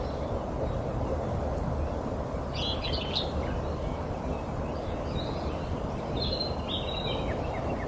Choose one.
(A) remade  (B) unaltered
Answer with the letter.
B